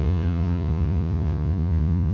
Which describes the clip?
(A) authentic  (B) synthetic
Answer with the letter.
B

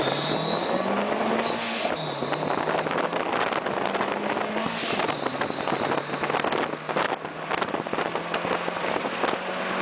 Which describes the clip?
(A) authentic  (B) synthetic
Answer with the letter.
A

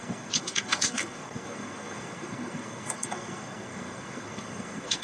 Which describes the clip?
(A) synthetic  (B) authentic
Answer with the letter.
A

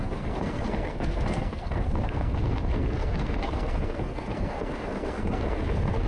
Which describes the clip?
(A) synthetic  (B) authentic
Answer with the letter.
A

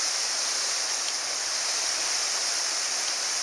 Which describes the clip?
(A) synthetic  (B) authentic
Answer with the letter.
B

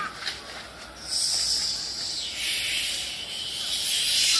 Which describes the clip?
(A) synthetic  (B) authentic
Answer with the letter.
B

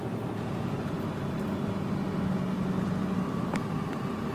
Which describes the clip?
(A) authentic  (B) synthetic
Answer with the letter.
A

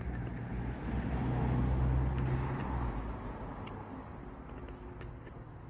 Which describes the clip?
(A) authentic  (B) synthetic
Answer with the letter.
A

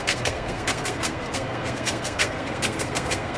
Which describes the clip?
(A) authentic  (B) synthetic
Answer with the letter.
B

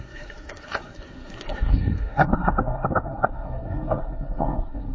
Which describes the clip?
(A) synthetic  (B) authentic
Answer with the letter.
A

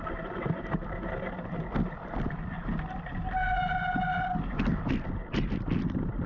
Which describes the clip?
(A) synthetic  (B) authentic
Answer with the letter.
B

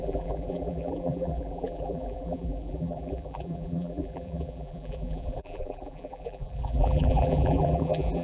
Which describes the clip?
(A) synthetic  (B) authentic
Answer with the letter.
A